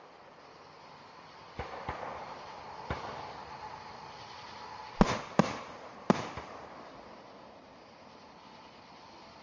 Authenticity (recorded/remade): recorded